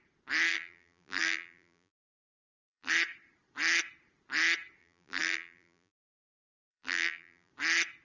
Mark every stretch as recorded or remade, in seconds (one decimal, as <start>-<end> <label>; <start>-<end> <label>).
0.0-0.5 recorded; 0.5-2.9 remade; 2.9-4.8 recorded; 4.8-7.5 remade; 7.5-8.0 recorded